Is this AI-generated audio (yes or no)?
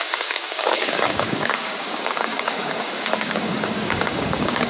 yes